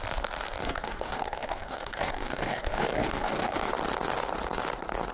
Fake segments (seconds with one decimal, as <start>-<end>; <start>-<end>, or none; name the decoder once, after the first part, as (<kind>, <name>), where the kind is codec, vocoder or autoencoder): 0.6-3.7 (codec, DAC)